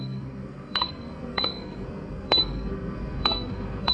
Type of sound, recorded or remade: remade